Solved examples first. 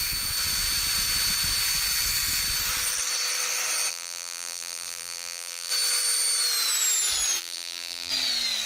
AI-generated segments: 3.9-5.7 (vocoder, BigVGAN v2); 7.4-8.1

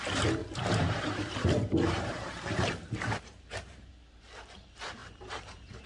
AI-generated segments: 0.4-3.9 (vocoder, BigVGAN v2); 5.0-5.9